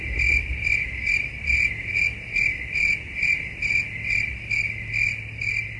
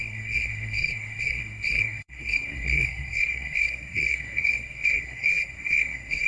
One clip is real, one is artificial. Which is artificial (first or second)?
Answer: second